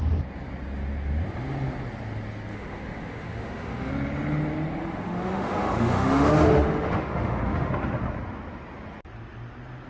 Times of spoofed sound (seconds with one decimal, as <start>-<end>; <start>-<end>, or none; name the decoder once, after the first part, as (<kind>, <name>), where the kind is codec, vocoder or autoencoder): 2.5-3.9 (autoencoder, DAC-VAE); 4.8-7.7